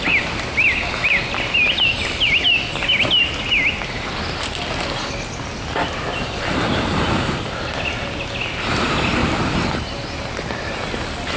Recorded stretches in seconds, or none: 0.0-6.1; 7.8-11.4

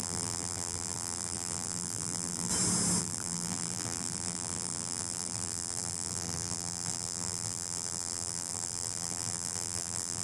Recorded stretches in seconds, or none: 2.5-3.0

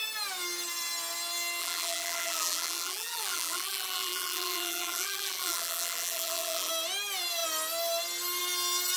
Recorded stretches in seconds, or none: 0.0-1.6; 6.7-9.0